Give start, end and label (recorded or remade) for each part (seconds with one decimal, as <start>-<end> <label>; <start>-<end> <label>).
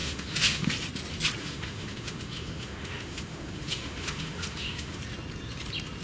0.0-0.7 remade; 0.7-1.4 recorded; 1.4-5.0 remade; 5.0-6.0 recorded